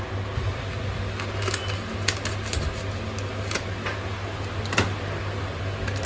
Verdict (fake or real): real